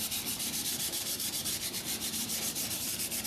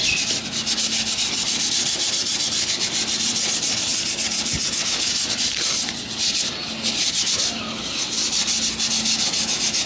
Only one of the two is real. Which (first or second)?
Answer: second